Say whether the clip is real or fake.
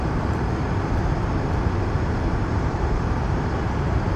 fake